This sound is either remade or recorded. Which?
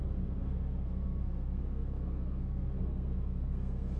remade